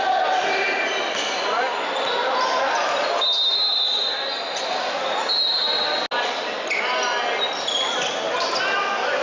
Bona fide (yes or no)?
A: yes